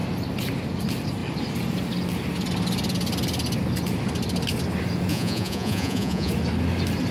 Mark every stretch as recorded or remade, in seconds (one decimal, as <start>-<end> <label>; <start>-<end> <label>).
0.0-5.1 recorded; 5.1-6.3 remade; 6.3-7.1 recorded

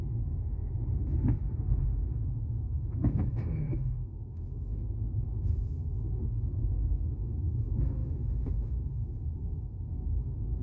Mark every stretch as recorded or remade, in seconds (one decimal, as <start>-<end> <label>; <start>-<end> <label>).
0.0-10.6 remade

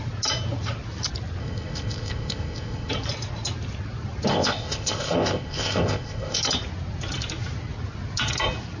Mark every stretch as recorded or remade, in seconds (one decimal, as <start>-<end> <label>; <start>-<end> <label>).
0.0-1.4 recorded; 1.4-2.9 remade; 2.9-4.3 recorded; 4.3-6.4 remade; 6.4-8.8 recorded

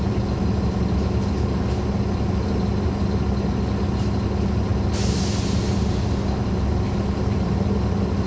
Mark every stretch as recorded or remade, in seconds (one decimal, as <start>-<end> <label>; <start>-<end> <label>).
0.0-8.3 recorded